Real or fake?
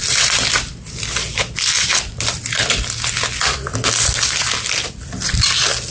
real